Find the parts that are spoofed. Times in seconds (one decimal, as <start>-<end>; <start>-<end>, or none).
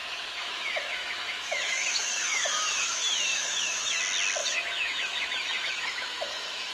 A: 0.0-4.0; 4.4-6.7